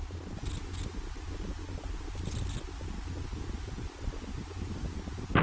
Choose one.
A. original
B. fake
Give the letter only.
A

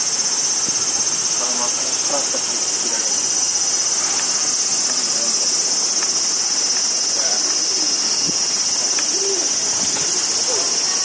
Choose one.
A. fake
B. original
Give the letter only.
B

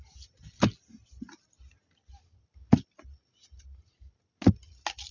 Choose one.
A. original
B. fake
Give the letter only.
A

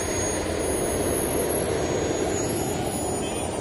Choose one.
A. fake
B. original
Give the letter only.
B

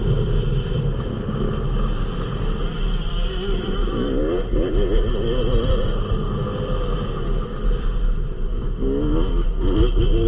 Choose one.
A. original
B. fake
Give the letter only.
A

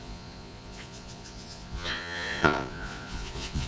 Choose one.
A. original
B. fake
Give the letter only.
B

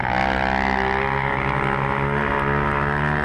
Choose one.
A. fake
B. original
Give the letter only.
B